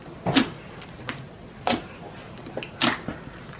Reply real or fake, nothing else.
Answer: real